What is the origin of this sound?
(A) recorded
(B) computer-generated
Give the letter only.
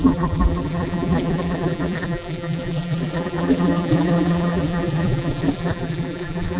B